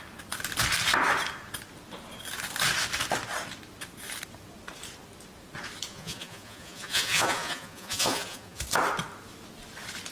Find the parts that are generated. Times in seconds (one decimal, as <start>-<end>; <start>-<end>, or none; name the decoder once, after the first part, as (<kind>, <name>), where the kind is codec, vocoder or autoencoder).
5.9-8.6 (vocoder, Vocos)